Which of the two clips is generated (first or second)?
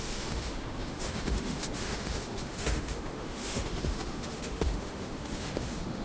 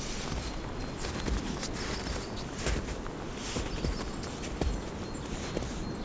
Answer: first